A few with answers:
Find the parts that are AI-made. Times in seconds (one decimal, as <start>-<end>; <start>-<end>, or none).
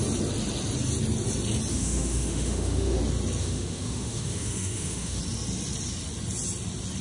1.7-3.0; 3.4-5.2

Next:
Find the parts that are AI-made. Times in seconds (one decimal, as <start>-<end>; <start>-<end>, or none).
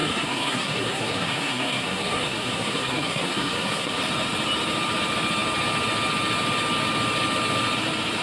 0.0-4.0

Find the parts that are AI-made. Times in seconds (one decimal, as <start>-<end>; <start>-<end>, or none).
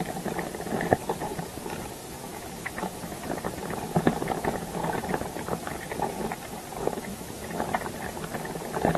2.0-3.2; 7.1-7.6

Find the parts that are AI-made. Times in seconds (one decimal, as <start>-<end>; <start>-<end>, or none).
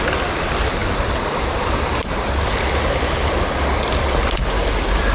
none